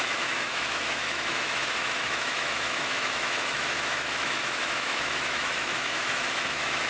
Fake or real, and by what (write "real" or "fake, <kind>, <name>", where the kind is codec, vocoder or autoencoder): fake, autoencoder, DAC-VAE